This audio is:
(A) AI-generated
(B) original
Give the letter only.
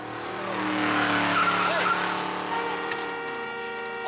B